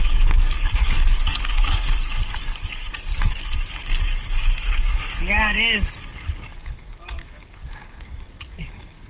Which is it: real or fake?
fake